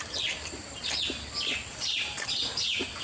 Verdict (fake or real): real